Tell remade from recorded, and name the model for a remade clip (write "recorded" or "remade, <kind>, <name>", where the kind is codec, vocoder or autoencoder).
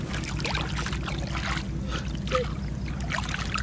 recorded